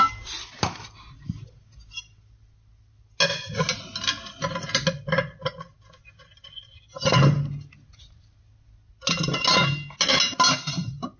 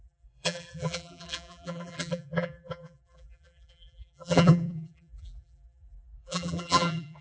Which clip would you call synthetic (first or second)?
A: second